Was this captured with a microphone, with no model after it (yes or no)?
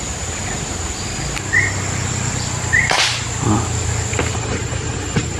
yes